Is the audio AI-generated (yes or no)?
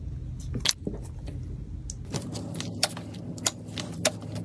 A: no